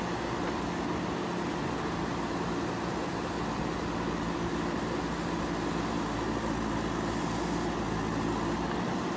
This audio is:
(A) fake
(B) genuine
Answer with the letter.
B